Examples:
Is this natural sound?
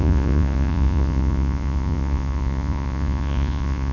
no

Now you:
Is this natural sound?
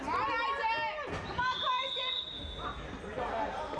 yes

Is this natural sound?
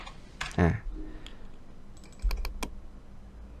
yes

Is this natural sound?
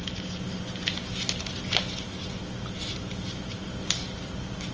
yes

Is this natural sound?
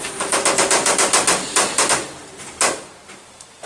yes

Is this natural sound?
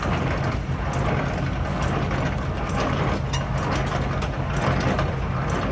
yes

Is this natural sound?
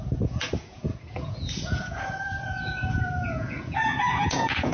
no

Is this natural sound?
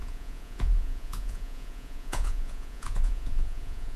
no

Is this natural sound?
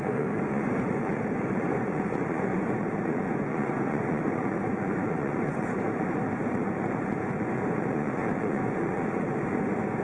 no